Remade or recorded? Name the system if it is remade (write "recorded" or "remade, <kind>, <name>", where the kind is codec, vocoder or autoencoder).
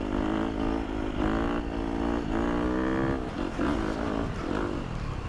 recorded